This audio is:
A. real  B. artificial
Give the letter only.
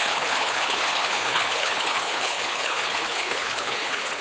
B